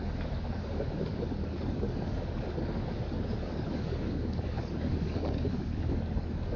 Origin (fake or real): fake